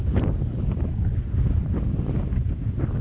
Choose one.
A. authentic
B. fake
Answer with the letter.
A